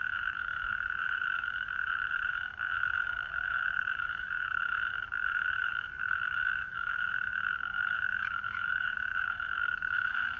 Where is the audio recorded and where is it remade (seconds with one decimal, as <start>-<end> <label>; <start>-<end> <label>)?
0.0-10.4 remade